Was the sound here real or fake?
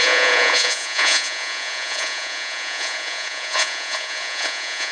fake